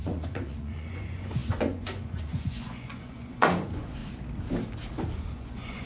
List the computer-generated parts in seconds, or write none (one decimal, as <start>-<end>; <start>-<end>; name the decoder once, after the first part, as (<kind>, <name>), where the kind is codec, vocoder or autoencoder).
0.0-4.0 (vocoder, Vocos); 5.2-5.9